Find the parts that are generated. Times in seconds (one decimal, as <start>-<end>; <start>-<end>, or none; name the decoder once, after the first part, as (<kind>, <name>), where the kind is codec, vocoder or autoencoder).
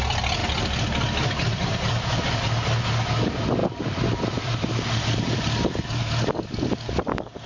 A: 0.4-2.4 (vocoder, BigVGAN v2); 3.6-5.4